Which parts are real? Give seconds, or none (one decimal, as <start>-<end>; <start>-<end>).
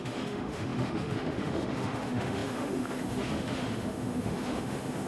none